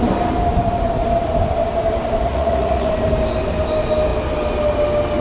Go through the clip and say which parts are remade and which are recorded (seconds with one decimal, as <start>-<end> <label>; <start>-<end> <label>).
0.0-2.3 recorded; 2.3-2.9 remade; 2.9-5.2 recorded